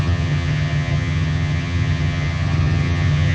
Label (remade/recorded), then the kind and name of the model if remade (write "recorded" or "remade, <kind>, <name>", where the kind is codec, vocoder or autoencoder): remade, vocoder, HiFi-GAN